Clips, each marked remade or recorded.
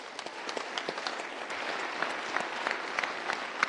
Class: recorded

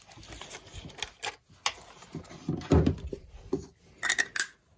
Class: recorded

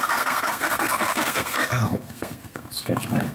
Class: remade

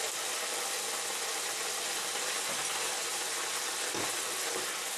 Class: recorded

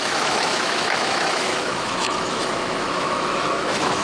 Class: remade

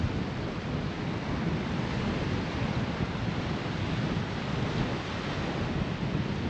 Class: recorded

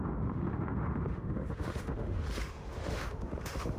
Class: remade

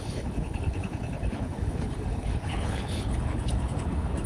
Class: remade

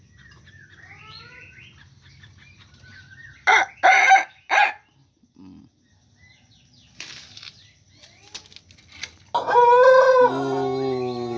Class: recorded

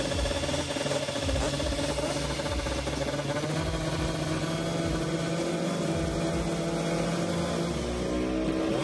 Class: recorded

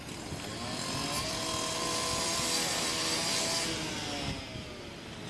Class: recorded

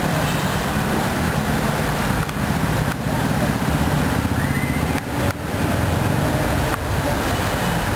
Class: recorded